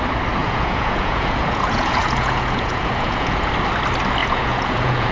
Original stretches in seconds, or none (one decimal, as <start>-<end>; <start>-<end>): 0.0-0.4; 3.5-4.2